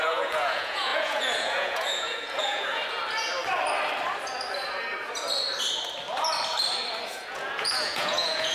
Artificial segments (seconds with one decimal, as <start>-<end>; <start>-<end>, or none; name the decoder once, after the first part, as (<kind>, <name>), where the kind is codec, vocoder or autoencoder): 0.0-2.8 (vocoder, Vocos); 7.1-8.5